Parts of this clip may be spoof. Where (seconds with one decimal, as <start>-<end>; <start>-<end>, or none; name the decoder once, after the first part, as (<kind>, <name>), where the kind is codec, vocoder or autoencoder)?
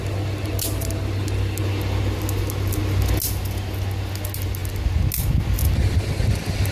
none